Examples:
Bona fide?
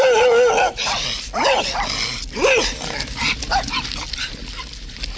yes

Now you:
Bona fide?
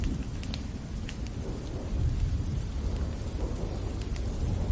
yes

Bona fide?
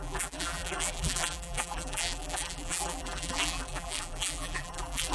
no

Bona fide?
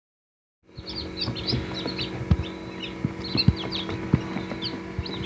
yes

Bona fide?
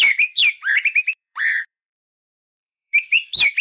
no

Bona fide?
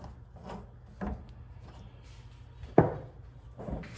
yes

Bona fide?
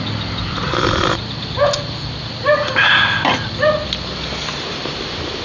yes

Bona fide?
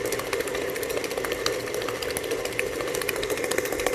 yes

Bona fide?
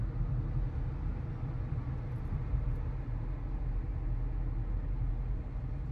yes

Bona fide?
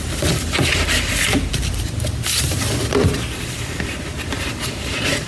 no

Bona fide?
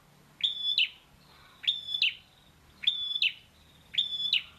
yes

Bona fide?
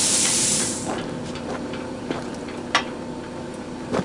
no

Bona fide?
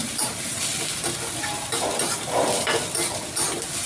no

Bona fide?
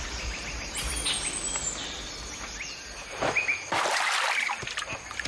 yes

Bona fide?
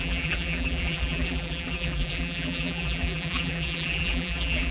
no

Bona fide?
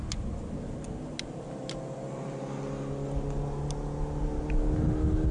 yes